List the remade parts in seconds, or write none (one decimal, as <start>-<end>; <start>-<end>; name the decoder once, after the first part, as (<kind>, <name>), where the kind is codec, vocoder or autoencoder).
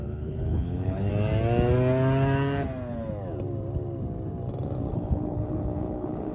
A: 0.0-1.1 (codec, HILCodec); 4.9-6.3